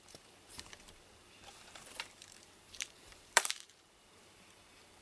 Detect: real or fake fake